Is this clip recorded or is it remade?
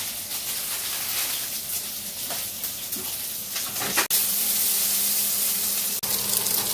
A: recorded